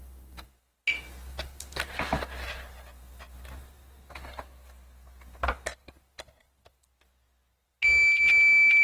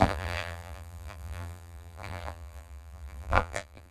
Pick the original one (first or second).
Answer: first